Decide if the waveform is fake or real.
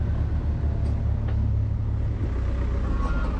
real